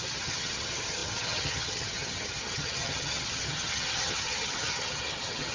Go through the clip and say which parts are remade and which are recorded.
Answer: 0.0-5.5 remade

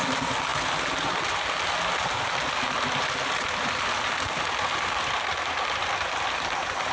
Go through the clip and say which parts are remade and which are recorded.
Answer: 0.0-6.9 recorded

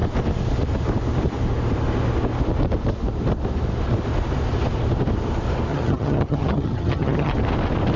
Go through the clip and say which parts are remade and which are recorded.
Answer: 0.0-5.7 recorded; 5.7-7.3 remade; 7.3-8.0 recorded

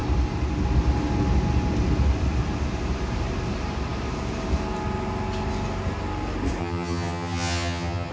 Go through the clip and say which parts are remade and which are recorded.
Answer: 0.0-6.6 recorded; 6.6-8.1 remade

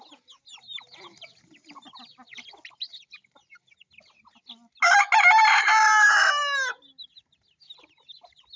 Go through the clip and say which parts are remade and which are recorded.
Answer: 0.0-8.6 recorded

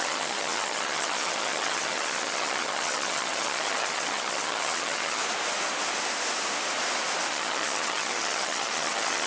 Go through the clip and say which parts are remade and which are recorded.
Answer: 0.0-5.2 remade; 5.2-7.3 recorded; 7.3-9.3 remade

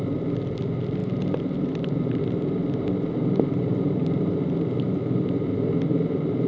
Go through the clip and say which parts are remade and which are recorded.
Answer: 0.0-6.5 recorded